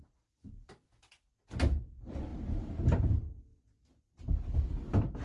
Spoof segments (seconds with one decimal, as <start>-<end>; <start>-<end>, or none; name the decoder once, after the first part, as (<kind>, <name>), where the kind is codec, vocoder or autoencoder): none